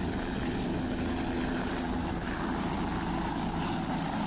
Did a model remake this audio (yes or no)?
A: no